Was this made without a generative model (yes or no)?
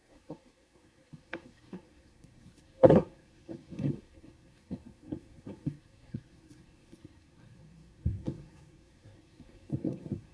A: no